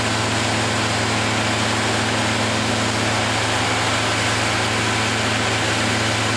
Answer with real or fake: real